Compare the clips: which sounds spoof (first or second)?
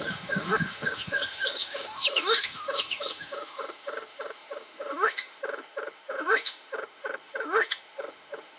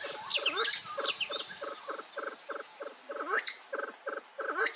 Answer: first